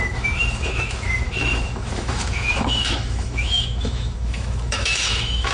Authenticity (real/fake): fake